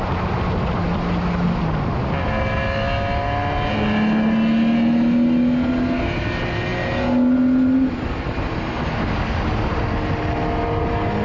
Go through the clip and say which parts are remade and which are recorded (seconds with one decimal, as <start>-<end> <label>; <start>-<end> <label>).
0.0-11.2 recorded